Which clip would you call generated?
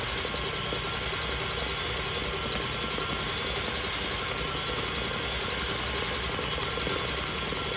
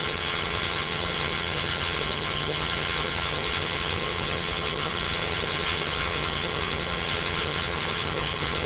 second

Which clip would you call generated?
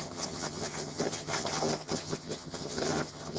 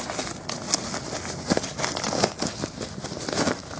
first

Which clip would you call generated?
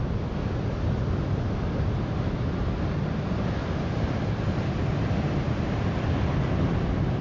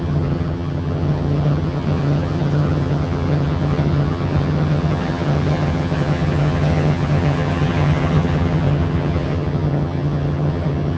second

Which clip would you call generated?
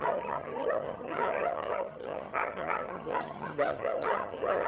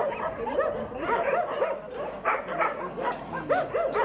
first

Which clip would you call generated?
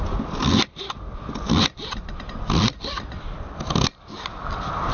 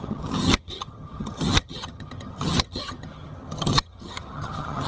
second